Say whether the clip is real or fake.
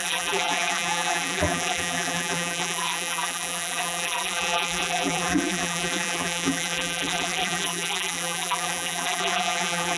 fake